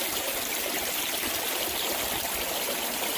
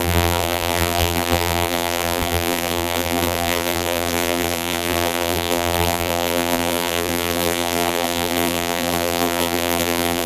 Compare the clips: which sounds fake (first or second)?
second